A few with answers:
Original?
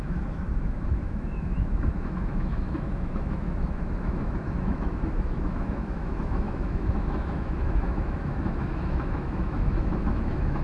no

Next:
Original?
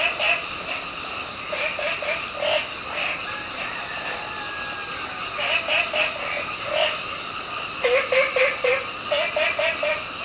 yes